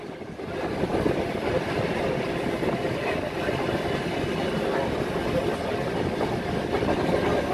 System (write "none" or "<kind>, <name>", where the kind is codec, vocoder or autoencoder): none